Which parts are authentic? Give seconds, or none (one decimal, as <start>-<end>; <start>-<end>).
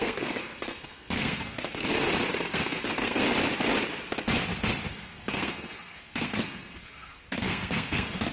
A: 1.9-2.5; 3.2-4.9